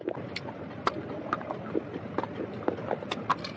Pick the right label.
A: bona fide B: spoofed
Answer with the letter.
A